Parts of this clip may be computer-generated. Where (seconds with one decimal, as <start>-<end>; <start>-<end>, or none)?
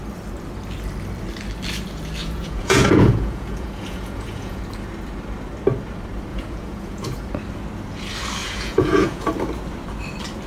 2.2-4.6; 6.3-7.3; 8.4-9.3